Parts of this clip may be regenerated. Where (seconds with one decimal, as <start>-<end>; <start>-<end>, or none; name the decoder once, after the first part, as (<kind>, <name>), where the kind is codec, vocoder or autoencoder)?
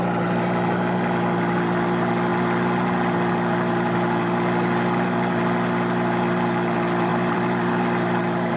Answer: 7.1-7.7 (vocoder, BigVGAN v2)